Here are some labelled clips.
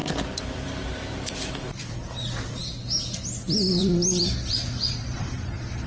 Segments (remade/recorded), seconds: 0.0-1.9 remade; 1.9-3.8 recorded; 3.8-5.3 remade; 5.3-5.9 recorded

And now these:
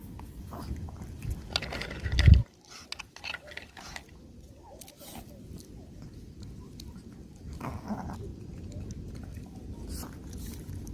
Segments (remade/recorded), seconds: 0.0-10.9 recorded

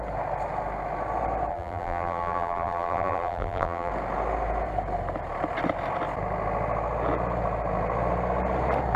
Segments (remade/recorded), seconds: 0.0-1.5 recorded; 1.5-3.9 remade; 3.9-9.0 recorded

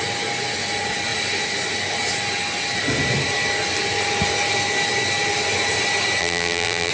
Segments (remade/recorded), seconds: 0.0-6.2 recorded; 6.2-6.9 remade

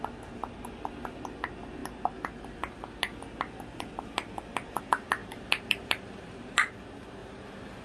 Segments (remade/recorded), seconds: 0.0-5.2 recorded; 5.2-6.7 remade; 6.7-7.2 recorded; 7.2-7.8 remade

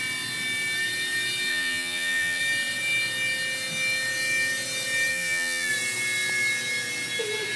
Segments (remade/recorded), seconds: 0.0-1.5 recorded; 1.5-2.4 remade; 2.4-5.1 recorded; 5.1-5.7 remade; 5.7-7.6 recorded

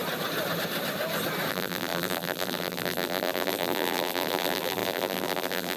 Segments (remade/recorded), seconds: 0.0-1.5 recorded; 1.5-5.8 remade